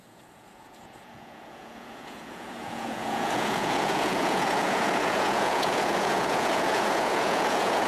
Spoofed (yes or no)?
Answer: yes